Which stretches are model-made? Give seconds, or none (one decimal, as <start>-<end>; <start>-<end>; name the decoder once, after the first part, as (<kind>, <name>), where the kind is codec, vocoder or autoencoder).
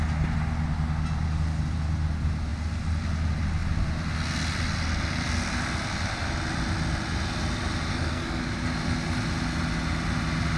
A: 7.9-8.4 (codec, SNAC)